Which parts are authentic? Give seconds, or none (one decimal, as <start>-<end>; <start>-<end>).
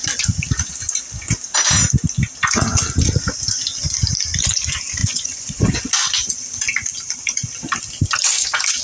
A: 0.0-5.0; 5.8-8.8